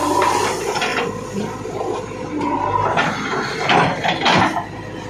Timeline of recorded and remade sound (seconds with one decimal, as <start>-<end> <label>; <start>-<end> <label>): 0.0-5.1 recorded